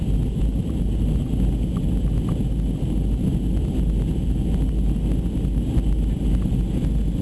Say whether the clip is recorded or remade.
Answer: recorded